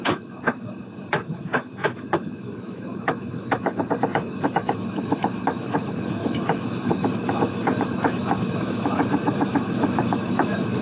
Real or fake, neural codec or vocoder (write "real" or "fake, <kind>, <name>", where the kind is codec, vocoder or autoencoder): fake, autoencoder, DAC-VAE